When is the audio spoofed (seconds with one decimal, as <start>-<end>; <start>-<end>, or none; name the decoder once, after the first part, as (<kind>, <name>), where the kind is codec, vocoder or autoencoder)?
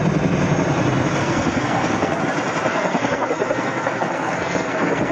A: 1.2-2.2 (codec, SNAC); 2.7-5.1